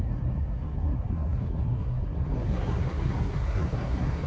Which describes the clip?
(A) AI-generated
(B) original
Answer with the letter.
A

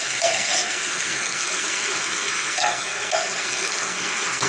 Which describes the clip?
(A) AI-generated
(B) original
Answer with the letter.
A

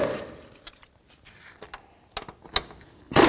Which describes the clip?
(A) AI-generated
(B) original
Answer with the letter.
B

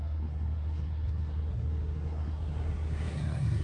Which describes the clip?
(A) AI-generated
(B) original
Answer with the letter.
A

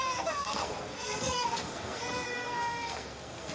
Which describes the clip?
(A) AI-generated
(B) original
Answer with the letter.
A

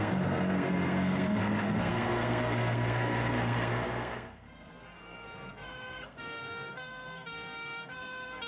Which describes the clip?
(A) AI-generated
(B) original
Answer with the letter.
A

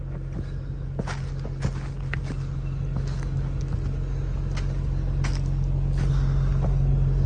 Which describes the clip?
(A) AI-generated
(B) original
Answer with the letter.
B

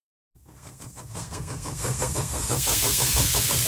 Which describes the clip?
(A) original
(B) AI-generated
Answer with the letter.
B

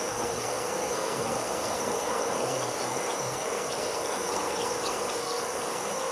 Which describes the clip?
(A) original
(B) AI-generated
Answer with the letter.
B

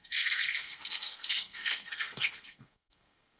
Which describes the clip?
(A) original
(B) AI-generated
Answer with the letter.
B